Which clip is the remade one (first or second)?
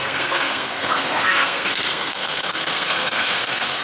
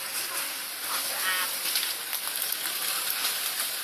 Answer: first